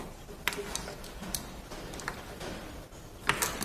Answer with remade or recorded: recorded